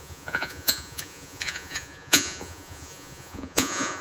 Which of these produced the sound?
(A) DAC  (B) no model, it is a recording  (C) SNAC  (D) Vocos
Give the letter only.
D